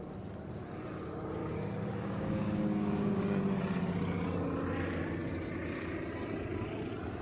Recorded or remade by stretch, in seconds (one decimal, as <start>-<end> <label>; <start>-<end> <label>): 0.0-1.4 recorded; 1.4-3.4 remade; 3.4-7.2 recorded